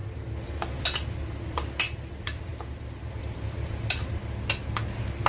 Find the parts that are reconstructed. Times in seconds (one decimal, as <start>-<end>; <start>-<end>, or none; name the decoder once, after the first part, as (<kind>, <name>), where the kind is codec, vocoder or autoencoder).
none